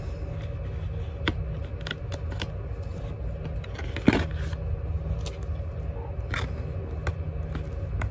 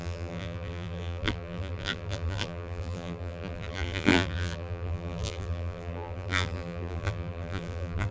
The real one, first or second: first